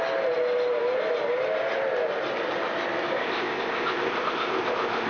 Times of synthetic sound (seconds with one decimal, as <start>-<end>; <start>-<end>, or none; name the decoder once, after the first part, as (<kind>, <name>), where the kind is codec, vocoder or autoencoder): 3.2-5.1 (codec, ZipCodec)